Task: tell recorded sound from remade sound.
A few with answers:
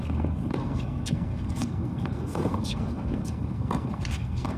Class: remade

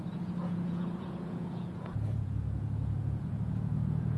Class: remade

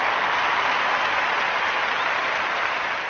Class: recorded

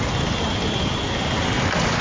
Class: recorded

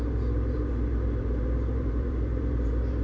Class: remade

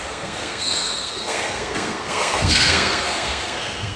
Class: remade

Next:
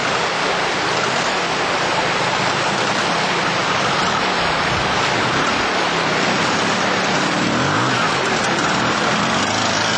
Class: recorded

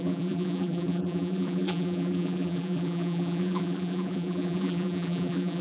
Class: remade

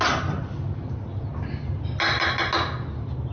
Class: recorded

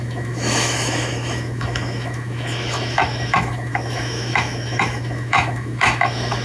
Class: remade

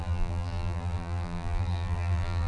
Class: remade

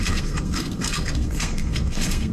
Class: remade